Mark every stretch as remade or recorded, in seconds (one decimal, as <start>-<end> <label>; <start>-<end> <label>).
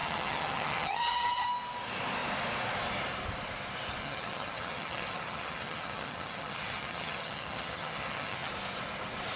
0.0-1.4 remade; 1.4-4.0 recorded; 4.0-8.5 remade; 8.5-9.4 recorded